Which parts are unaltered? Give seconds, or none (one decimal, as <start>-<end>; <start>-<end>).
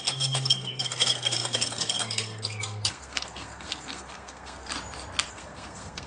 4.7-5.3